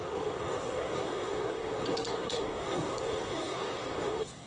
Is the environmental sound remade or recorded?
remade